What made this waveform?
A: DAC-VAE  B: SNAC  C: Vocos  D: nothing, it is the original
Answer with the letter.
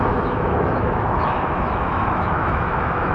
A